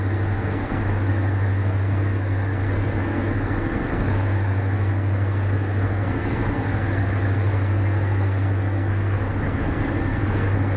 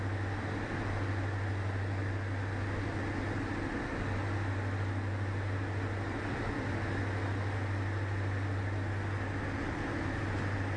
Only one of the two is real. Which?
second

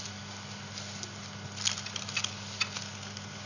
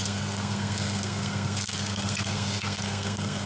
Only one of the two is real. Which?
first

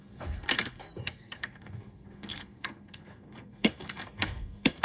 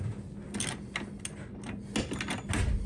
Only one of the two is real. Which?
second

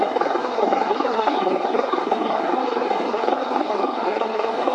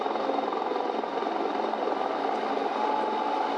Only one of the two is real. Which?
second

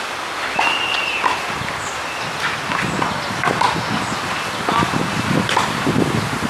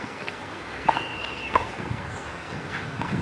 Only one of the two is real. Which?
first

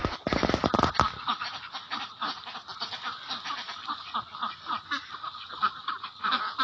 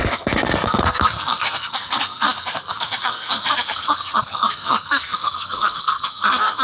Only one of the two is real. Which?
first